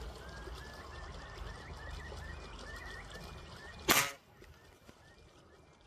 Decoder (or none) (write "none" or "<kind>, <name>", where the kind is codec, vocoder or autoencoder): none